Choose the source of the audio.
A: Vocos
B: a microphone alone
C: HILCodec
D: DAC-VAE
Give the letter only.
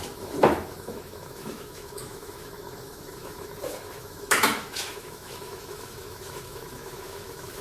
D